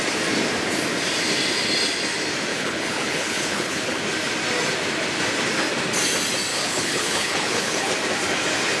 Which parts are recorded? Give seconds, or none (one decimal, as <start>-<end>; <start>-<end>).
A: 0.0-2.5; 4.0-6.5; 7.9-8.8